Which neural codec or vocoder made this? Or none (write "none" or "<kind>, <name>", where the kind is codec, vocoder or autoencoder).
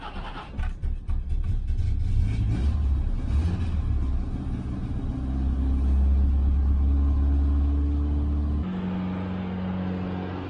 none